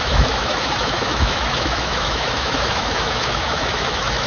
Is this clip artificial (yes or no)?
yes